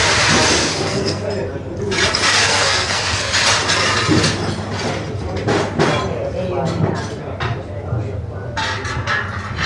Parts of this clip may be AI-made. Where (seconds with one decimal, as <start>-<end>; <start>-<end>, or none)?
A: 0.6-1.3; 2.4-3.3